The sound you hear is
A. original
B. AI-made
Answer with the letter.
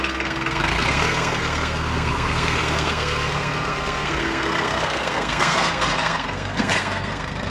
B